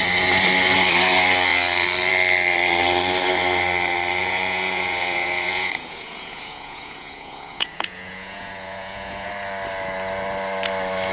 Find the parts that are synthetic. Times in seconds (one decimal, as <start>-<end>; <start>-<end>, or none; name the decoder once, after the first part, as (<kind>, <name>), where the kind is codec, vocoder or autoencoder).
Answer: 4.2-9.3 (vocoder, Vocos)